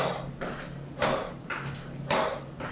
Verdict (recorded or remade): recorded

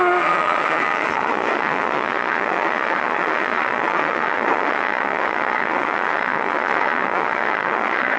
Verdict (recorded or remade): remade